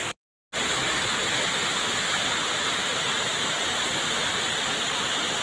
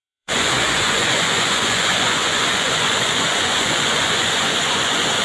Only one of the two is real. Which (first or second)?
first